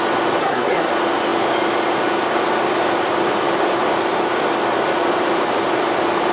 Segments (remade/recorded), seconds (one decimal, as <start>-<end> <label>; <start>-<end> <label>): 0.0-0.4 recorded; 0.4-0.9 remade; 0.9-6.3 recorded